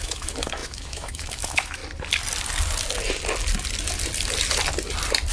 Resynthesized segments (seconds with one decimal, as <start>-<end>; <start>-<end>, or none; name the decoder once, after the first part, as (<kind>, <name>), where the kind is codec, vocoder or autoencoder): 0.0-1.8 (autoencoder, DAC-VAE)